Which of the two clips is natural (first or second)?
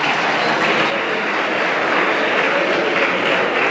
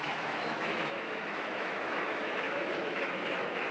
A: first